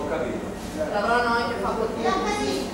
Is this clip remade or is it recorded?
recorded